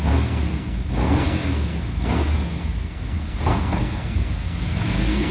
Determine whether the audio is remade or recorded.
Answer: remade